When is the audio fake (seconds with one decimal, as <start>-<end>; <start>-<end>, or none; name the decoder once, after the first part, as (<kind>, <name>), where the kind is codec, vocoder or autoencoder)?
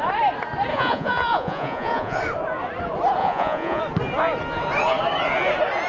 0.7-2.2 (vocoder, Vocos); 3.2-3.8